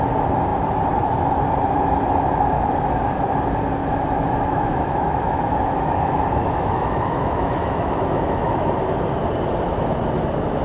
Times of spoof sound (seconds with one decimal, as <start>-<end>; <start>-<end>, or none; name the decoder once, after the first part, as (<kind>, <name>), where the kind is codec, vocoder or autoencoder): 3.8-8.7 (autoencoder, DAC-VAE)